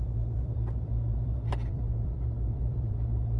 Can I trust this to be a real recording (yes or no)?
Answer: no